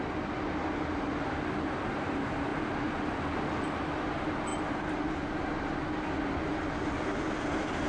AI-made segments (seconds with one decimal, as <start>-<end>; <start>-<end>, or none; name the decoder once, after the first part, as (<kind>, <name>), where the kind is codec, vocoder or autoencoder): none